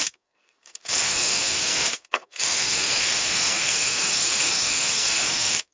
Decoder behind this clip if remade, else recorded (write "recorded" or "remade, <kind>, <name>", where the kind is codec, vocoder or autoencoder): remade, codec, SNAC